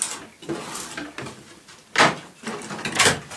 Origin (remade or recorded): recorded